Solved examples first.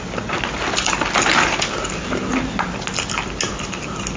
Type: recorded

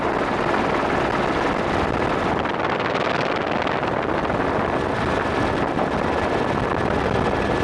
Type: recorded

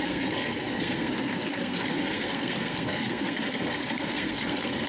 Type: remade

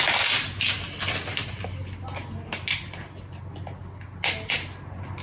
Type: recorded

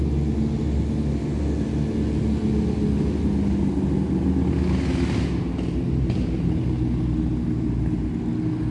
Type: recorded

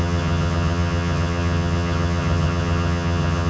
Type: remade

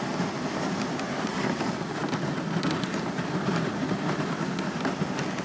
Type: recorded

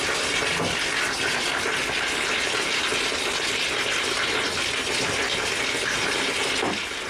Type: recorded